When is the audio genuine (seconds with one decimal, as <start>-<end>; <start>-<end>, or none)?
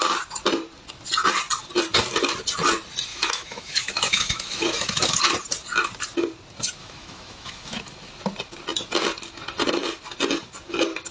0.0-3.1; 5.2-6.8; 7.8-11.1